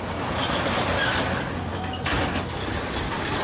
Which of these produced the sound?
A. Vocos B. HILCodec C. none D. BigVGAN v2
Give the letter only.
C